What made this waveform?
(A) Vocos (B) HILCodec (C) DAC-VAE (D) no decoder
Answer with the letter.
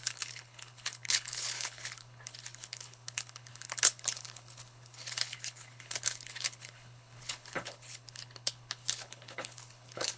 B